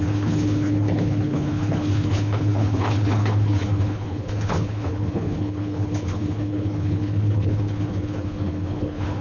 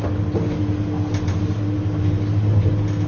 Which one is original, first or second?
second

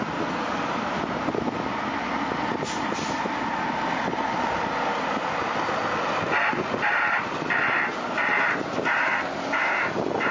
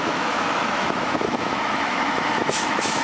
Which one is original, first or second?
first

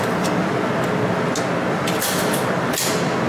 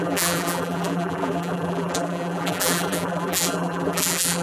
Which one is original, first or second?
first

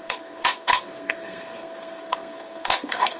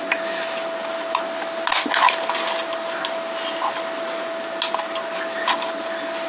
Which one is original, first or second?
second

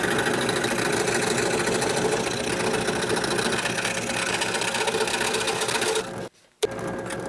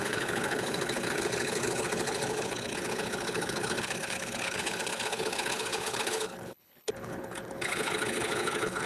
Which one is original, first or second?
first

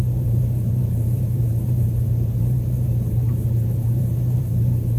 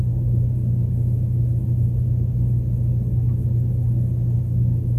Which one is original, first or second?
second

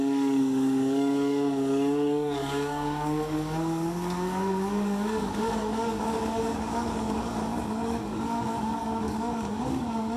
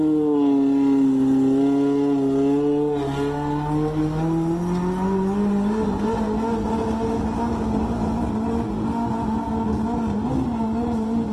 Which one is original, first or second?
second